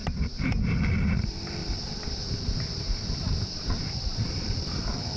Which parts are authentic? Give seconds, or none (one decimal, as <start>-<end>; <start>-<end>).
1.6-3.7